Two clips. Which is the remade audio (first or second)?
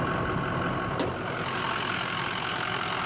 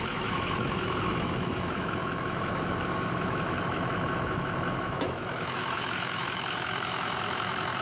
second